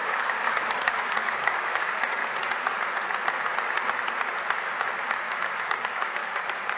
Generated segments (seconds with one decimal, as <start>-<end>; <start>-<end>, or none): 0.0-2.2; 5.6-6.8